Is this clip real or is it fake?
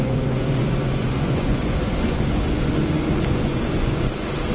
fake